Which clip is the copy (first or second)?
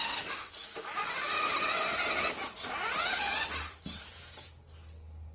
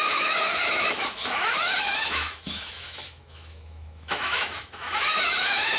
second